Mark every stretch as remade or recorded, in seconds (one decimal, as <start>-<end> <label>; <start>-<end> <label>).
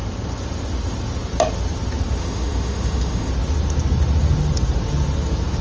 0.0-2.2 recorded; 2.2-3.3 remade; 3.3-5.6 recorded